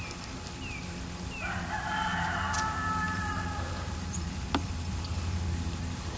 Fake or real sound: fake